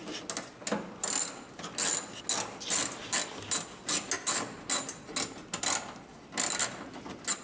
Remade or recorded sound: recorded